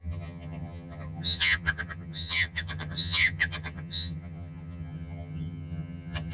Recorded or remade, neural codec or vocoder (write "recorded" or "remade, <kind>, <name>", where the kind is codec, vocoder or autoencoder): remade, vocoder, HiFi-GAN